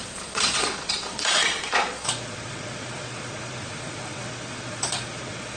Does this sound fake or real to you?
fake